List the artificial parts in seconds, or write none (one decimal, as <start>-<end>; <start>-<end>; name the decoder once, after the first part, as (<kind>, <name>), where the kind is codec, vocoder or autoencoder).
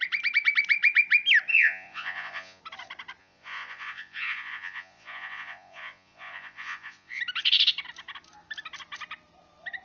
1.5-2.6 (vocoder, Vocos); 3.2-7.2